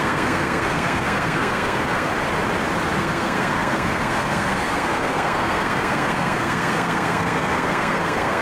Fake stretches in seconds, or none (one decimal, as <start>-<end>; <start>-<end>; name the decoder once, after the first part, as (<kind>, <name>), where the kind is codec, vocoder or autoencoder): 0.0-2.1 (codec, SNAC); 3.0-8.4